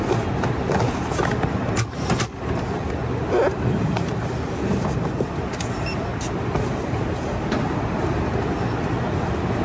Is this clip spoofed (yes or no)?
no